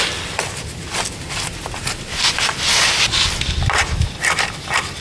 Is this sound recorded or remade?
recorded